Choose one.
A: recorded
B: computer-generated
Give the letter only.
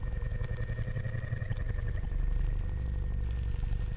A